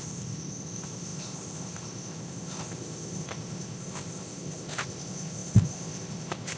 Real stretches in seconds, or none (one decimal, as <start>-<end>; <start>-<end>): none